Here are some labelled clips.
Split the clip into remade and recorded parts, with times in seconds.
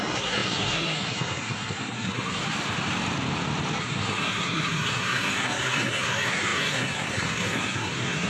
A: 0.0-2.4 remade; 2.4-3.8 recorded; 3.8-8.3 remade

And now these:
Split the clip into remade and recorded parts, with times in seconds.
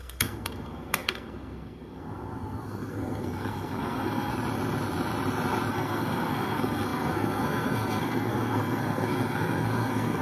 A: 0.0-4.3 remade; 4.3-5.7 recorded; 5.7-10.2 remade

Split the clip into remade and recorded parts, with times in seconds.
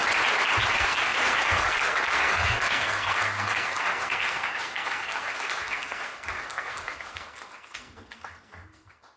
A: 0.0-0.7 recorded; 0.7-9.2 remade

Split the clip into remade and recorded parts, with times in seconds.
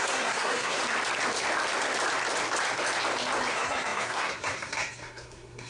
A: 0.0-0.8 remade; 0.8-3.5 recorded; 3.5-5.7 remade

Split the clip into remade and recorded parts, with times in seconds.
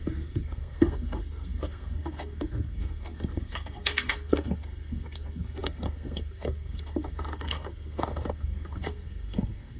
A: 0.0-9.8 remade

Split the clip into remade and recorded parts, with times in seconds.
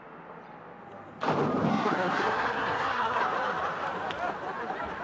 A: 0.0-1.7 recorded; 1.7-3.2 remade; 3.2-5.0 recorded